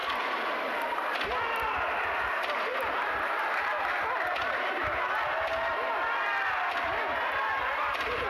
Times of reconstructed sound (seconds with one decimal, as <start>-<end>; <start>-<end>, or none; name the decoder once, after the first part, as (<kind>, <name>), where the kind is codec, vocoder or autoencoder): 0.0-2.7 (vocoder, BigVGAN v2); 7.3-8.3